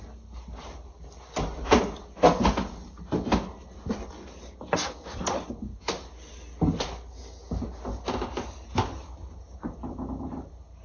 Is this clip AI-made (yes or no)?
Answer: no